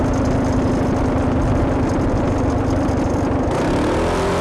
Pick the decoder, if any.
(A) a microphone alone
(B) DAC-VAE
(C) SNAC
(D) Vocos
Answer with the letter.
A